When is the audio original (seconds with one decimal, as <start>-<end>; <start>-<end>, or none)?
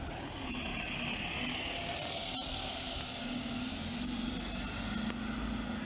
0.0-5.9